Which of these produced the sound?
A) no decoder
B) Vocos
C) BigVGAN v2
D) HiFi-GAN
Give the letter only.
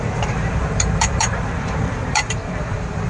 C